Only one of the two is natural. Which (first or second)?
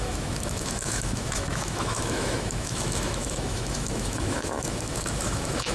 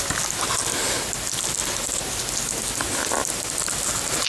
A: second